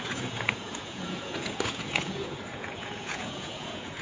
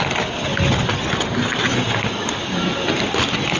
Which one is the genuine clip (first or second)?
second